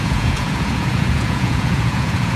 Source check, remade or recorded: remade